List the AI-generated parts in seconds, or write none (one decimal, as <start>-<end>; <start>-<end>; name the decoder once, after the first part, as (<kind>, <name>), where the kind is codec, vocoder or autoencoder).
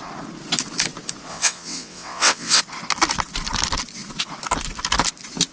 1.3-2.6 (vocoder, WaveNeXt)